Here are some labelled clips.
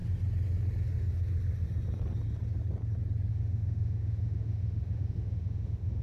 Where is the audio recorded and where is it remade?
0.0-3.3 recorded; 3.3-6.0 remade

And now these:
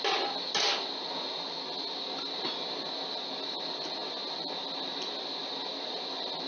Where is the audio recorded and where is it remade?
0.0-6.5 recorded

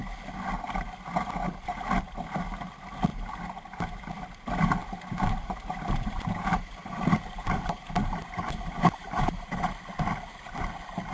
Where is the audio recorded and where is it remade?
0.0-3.1 recorded; 3.1-4.1 remade; 4.1-4.8 recorded; 4.8-9.7 remade; 9.7-11.1 recorded

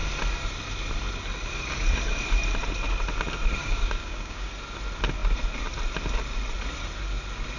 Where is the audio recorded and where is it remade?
0.0-3.6 recorded; 3.6-4.5 remade; 4.5-7.6 recorded

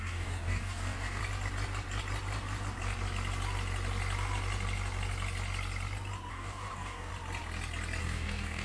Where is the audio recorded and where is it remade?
0.0-1.2 remade; 1.2-6.3 recorded; 6.3-7.1 remade; 7.1-8.0 recorded; 8.0-8.6 remade

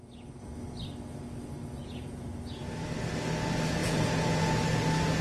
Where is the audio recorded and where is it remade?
0.0-1.8 recorded; 1.8-2.7 remade; 2.7-3.8 recorded; 3.8-4.6 remade; 4.6-5.2 recorded

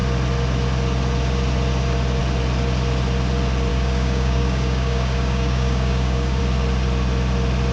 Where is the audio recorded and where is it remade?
0.0-3.7 recorded; 3.7-6.4 remade; 6.4-7.7 recorded